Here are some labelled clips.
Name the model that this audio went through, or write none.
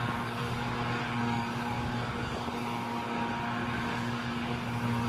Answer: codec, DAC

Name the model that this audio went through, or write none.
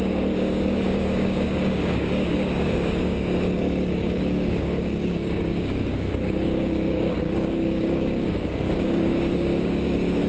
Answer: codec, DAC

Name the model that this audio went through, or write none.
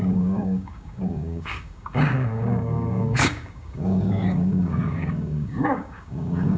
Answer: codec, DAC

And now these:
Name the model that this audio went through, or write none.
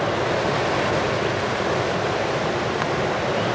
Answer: none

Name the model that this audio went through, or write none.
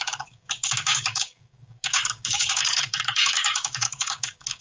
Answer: codec, DAC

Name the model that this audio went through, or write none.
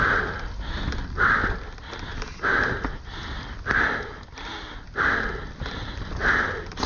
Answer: none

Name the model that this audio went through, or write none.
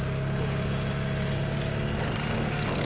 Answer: none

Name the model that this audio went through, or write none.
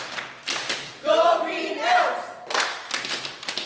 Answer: none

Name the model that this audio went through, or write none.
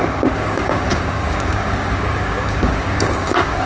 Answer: codec, DAC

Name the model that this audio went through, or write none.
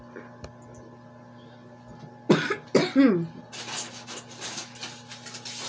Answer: none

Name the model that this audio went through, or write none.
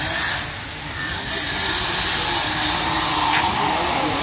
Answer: none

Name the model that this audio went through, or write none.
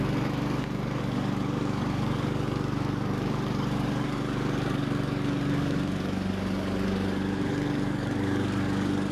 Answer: codec, DAC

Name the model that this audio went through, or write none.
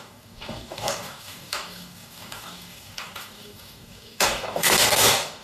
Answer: codec, DAC